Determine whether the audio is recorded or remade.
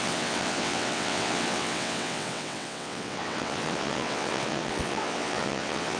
remade